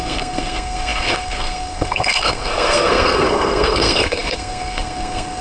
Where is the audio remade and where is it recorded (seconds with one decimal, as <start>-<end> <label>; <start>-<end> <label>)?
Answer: 0.0-5.4 remade